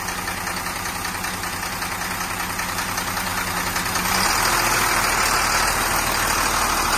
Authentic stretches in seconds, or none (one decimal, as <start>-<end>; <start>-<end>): 0.0-3.3; 4.3-7.0